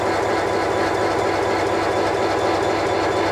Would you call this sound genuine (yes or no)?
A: yes